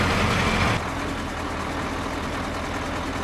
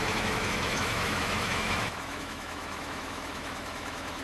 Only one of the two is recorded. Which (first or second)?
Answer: first